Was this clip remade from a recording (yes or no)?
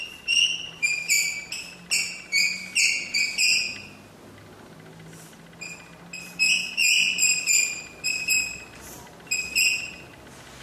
no